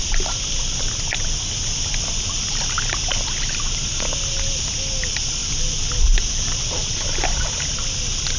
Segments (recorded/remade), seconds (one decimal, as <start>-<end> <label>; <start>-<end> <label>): 0.0-8.4 recorded